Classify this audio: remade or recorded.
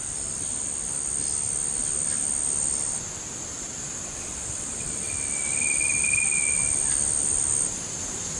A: recorded